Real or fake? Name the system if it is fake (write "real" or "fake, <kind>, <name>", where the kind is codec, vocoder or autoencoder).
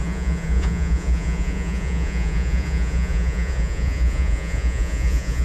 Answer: fake, vocoder, Vocos